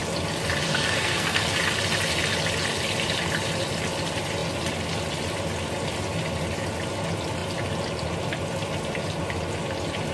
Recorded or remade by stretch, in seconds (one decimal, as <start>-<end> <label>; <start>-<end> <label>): 0.0-0.7 recorded; 0.7-1.5 remade; 1.5-10.1 recorded